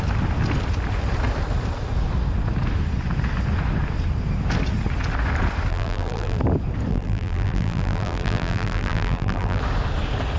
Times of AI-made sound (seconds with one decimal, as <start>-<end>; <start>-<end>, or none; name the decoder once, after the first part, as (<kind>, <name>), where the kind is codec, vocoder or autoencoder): 5.7-6.4 (vocoder, BigVGAN v2); 6.9-9.6